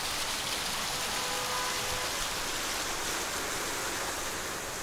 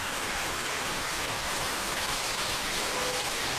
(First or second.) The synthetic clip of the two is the second